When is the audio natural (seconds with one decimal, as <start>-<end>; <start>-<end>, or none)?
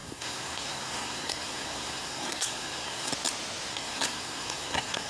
3.1-3.7